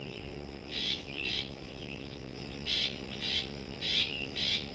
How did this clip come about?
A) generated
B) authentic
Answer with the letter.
A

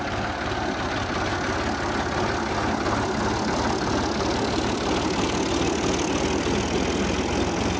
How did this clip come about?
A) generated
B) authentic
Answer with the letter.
B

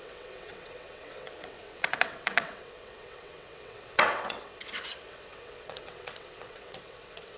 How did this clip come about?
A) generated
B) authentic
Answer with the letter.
A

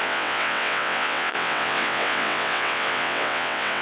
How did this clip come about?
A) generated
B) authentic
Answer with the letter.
A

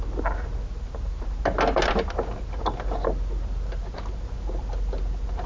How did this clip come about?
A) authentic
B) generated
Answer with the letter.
A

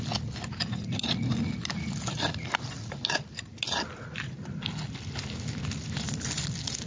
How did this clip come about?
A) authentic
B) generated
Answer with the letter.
A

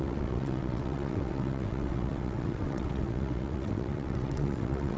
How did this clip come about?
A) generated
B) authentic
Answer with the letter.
A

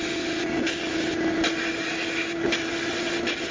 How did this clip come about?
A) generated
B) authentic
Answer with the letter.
B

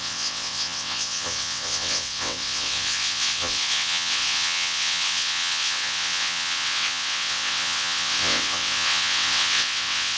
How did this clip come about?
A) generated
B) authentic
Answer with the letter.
A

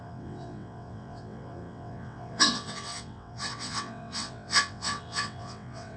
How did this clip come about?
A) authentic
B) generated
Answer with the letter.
B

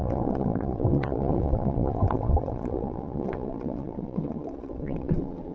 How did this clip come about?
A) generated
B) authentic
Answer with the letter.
A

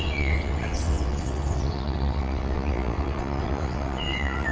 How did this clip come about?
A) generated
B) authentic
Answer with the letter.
A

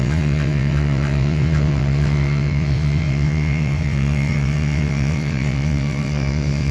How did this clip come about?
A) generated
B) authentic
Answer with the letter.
A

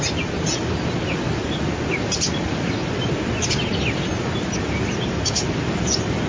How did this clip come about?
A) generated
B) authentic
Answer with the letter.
B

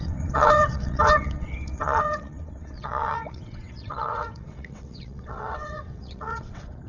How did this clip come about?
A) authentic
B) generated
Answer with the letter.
B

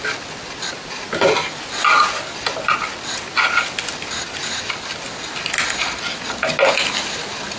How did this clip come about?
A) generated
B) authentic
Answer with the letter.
B